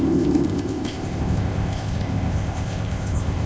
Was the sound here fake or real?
fake